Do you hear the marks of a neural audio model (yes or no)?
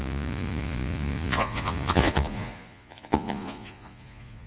yes